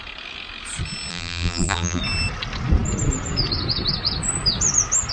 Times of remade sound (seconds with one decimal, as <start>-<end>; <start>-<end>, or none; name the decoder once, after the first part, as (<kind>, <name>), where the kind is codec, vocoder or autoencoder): 1.1-2.0 (vocoder, BigVGAN v2)